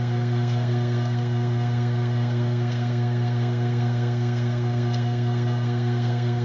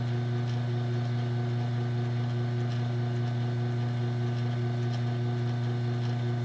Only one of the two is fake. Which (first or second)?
first